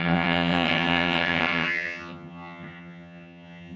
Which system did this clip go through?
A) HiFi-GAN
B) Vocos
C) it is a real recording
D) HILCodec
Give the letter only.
A